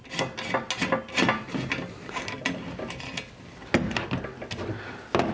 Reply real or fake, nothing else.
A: real